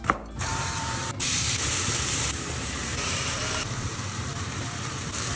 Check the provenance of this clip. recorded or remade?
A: remade